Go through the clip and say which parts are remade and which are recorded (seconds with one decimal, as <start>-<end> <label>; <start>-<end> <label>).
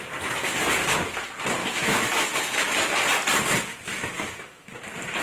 0.0-1.6 recorded; 1.6-2.9 remade; 2.9-3.7 recorded; 3.7-4.8 remade; 4.8-5.2 recorded